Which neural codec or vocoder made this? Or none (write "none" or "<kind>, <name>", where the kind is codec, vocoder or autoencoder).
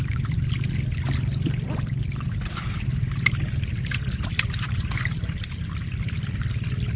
none